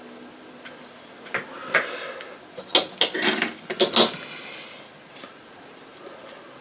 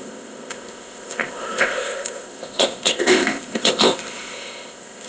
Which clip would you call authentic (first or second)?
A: first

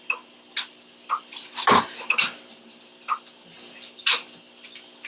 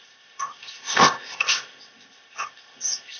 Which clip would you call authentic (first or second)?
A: first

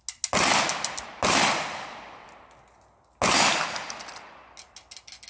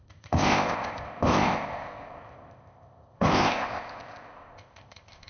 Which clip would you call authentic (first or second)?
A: first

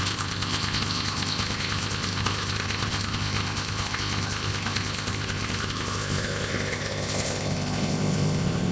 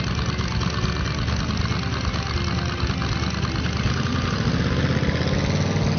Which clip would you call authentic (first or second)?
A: second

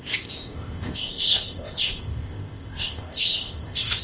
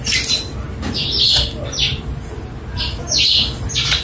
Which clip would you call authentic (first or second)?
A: second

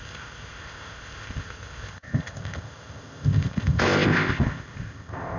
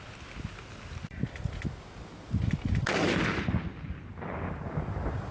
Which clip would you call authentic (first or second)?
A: second